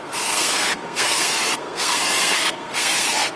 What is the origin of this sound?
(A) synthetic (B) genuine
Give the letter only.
A